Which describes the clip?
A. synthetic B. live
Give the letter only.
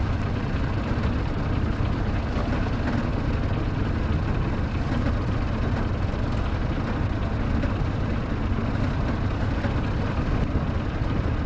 B